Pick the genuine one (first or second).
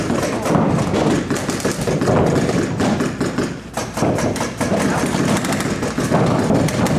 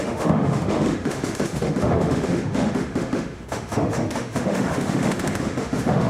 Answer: first